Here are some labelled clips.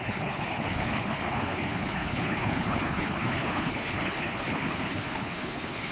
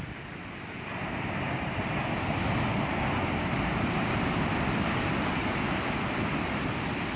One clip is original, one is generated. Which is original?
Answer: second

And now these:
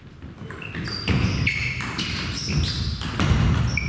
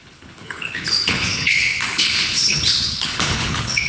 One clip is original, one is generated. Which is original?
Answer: first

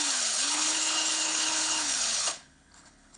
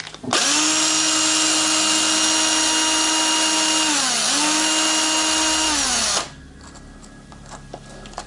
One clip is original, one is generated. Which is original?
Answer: second